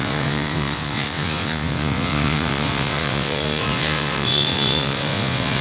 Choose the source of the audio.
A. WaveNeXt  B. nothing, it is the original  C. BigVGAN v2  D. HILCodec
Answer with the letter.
A